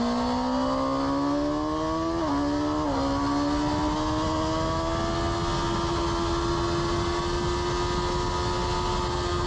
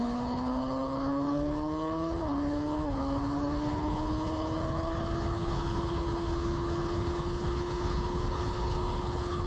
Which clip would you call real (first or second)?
first